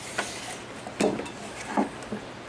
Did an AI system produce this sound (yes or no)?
no